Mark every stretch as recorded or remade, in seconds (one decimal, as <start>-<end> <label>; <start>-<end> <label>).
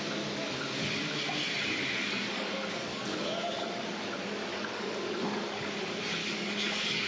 0.0-2.0 recorded; 2.0-4.0 remade; 4.0-4.5 recorded; 4.5-5.7 remade; 5.7-6.2 recorded; 6.2-7.1 remade